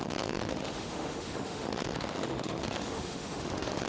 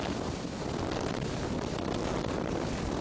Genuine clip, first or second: second